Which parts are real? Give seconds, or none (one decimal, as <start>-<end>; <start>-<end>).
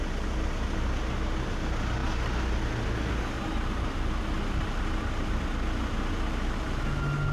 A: 0.0-7.3